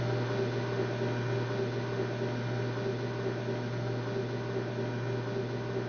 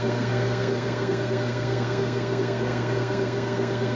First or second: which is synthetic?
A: second